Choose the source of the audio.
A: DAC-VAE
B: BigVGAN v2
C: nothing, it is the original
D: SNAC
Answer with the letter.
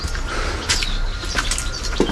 C